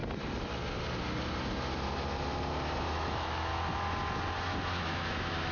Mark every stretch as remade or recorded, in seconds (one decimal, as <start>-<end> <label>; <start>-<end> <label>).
0.0-2.9 recorded; 2.9-3.5 remade; 3.5-4.8 recorded; 4.8-5.5 remade